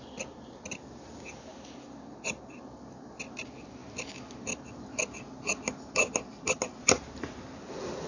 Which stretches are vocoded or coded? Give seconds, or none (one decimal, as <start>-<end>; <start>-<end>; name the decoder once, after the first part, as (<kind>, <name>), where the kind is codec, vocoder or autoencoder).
none